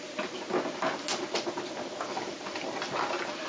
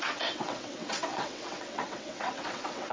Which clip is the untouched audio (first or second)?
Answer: first